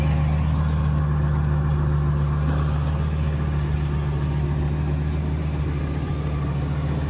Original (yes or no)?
yes